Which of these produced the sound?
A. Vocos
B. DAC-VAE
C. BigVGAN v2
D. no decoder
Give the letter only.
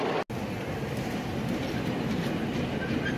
D